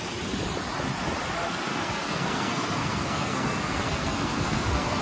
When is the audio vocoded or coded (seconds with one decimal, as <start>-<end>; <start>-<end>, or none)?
1.7-5.0

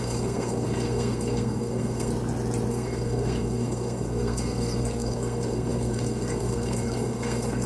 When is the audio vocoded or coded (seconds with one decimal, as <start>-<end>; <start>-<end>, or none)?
0.0-2.1; 2.7-7.7

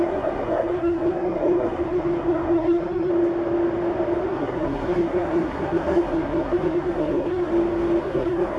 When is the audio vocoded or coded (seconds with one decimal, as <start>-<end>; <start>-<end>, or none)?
0.0-3.1; 4.3-7.5; 8.0-8.6